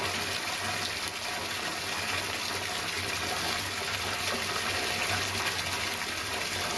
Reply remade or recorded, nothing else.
recorded